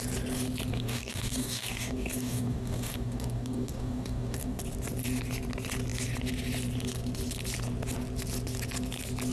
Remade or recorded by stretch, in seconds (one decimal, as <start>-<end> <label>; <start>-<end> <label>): 0.0-0.7 recorded; 0.7-4.6 remade; 4.6-9.3 recorded